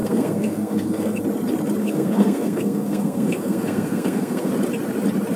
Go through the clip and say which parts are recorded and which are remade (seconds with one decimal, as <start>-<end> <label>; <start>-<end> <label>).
0.0-1.2 remade; 1.2-1.8 recorded; 1.8-4.5 remade; 4.5-5.4 recorded